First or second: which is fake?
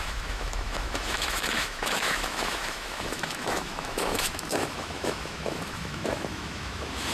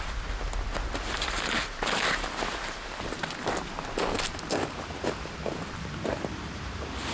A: first